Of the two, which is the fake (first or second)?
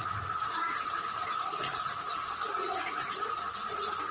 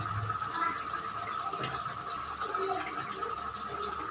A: first